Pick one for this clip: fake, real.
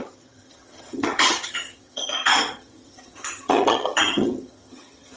fake